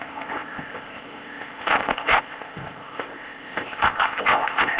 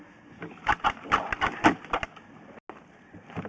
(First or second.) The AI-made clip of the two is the first